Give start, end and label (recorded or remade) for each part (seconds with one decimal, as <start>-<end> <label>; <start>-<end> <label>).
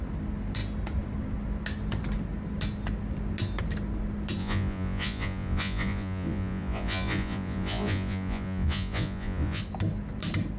0.0-4.4 recorded; 4.4-9.6 remade; 9.6-10.6 recorded